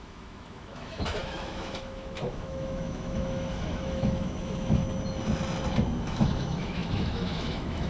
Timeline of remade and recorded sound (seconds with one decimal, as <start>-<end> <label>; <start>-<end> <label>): 0.0-4.8 remade; 4.8-6.0 recorded; 6.0-7.9 remade